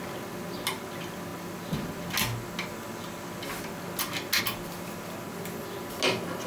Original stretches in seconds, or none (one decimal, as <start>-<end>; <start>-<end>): 0.0-6.5